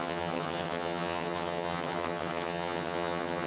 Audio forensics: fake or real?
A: fake